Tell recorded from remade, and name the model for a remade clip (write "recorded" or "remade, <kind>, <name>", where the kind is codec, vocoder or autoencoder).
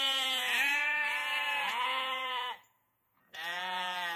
remade, vocoder, Vocos